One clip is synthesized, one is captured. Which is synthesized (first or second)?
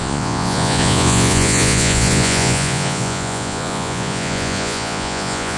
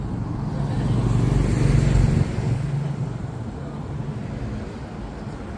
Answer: first